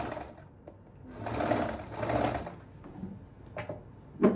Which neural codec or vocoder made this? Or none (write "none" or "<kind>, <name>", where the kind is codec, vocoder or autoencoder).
none